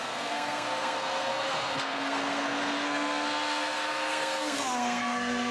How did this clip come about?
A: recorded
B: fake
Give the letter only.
B